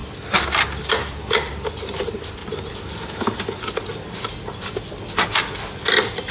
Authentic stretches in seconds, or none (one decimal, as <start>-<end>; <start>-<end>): 0.0-0.8; 2.4-6.3